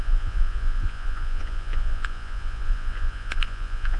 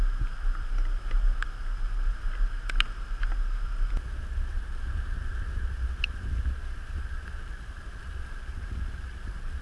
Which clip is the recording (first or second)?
second